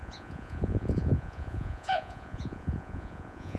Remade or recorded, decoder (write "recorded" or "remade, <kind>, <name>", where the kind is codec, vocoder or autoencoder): remade, vocoder, Vocos